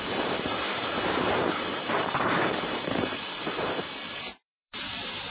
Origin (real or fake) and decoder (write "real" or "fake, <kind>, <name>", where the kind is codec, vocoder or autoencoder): fake, vocoder, BigVGAN v2